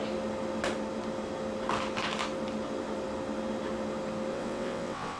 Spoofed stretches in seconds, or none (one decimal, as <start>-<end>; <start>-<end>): 4.3-5.2